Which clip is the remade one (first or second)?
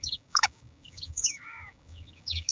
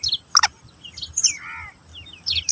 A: first